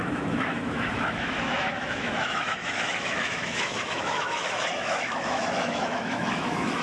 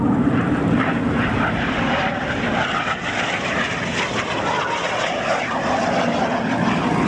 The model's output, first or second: first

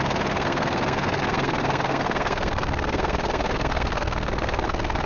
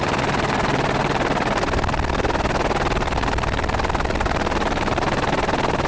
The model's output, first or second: first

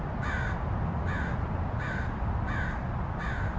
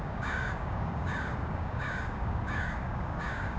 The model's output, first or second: second